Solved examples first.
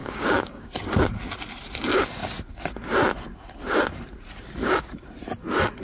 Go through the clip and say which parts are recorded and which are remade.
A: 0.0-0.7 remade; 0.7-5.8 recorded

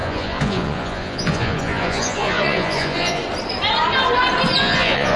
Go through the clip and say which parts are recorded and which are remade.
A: 0.0-3.2 remade; 3.2-4.6 recorded; 4.6-5.2 remade